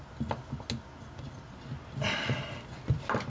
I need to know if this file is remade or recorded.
recorded